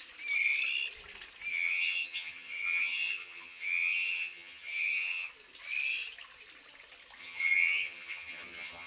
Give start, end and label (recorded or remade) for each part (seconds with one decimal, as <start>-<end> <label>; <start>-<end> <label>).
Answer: 0.0-1.5 recorded; 1.5-5.3 remade; 5.3-7.2 recorded; 7.2-8.9 remade